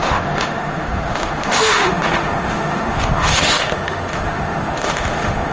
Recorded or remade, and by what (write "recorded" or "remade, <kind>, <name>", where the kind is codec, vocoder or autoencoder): remade, autoencoder, DAC-VAE